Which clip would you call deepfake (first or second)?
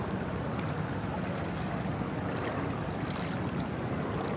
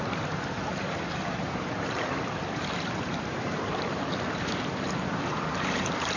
second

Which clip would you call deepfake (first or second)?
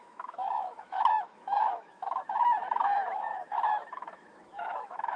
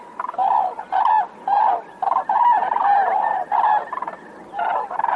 first